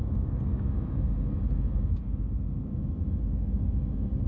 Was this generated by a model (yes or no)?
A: no